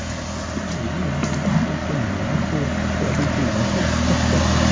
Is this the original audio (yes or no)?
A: yes